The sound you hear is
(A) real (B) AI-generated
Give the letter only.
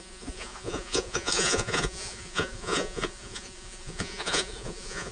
B